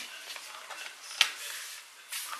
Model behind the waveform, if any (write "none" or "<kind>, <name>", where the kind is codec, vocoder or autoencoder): none